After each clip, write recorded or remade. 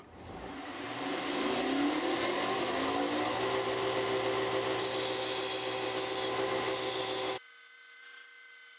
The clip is recorded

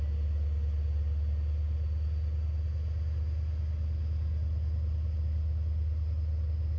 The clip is recorded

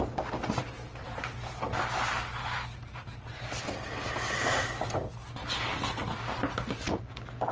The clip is recorded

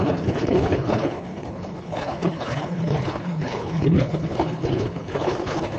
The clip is remade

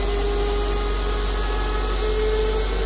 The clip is recorded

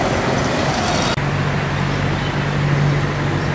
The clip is recorded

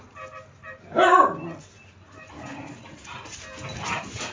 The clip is recorded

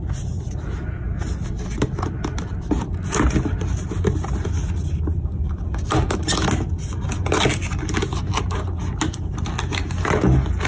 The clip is recorded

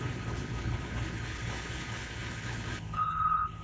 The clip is remade